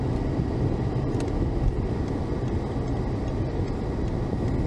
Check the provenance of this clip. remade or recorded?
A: recorded